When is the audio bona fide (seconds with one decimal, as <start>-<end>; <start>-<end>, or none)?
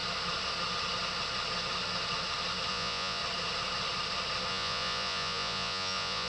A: 0.0-2.7; 3.2-4.5